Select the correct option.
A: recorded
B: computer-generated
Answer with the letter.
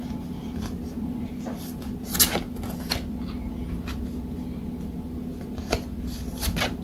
A